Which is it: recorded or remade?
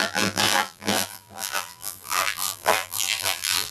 remade